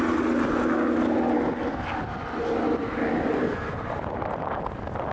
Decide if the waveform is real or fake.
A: real